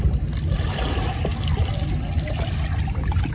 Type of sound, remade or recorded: recorded